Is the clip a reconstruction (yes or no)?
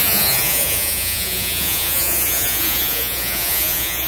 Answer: yes